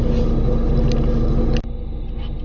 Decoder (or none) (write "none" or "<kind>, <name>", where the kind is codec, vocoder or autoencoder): none